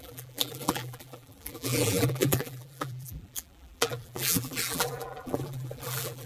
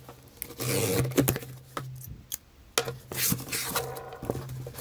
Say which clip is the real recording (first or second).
second